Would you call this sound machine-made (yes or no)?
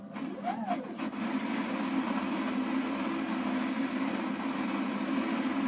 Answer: no